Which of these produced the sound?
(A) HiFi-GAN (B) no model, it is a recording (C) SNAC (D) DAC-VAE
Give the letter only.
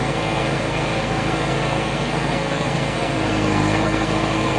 C